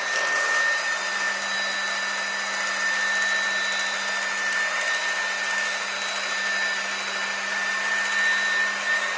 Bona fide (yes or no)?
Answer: yes